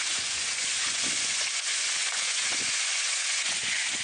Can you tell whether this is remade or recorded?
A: remade